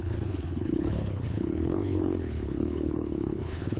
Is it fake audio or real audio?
fake